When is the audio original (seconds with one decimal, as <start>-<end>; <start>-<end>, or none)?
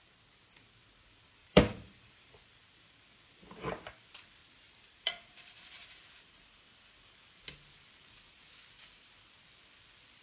0.0-1.4; 2.3-4.4; 5.6-10.2